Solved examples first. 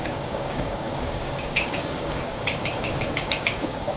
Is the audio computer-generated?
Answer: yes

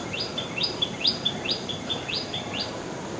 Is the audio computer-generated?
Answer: yes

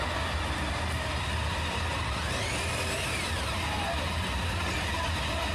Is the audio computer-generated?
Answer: no